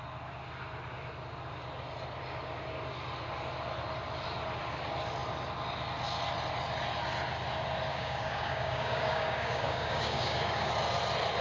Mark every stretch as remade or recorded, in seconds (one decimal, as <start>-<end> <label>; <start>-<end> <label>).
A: 0.0-7.9 recorded; 7.9-10.7 remade; 10.7-11.4 recorded